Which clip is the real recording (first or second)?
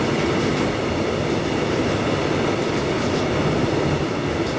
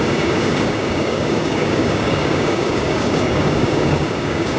first